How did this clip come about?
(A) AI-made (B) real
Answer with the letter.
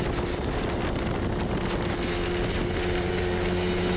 B